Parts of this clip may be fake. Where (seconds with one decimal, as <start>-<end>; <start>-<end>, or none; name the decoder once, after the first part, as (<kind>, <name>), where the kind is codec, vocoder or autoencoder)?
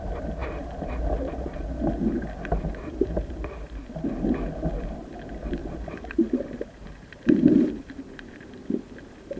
5.6-8.6 (vocoder, BigVGAN v2)